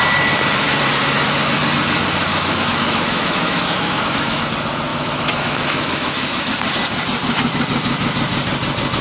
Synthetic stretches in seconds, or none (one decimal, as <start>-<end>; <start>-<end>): 2.3-4.4; 4.9-6.5